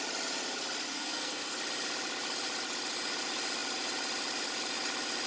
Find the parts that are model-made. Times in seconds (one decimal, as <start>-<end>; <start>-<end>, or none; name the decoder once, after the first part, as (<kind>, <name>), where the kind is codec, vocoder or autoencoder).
0.9-1.6 (codec, SNAC)